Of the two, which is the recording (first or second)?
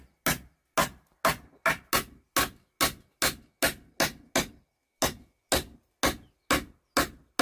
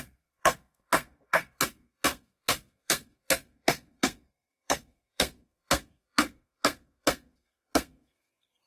first